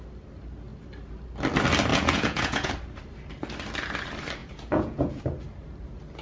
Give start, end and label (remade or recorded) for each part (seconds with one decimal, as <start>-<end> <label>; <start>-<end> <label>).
0.0-1.9 recorded; 1.9-2.7 remade; 2.7-4.4 recorded; 4.4-5.2 remade; 5.2-6.2 recorded